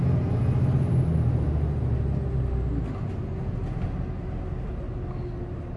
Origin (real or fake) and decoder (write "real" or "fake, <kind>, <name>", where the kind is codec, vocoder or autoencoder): real